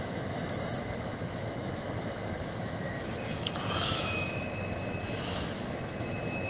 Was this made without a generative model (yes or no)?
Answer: no